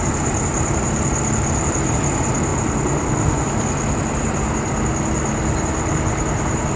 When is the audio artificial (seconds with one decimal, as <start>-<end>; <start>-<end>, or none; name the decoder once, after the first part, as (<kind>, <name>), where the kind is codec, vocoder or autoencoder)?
none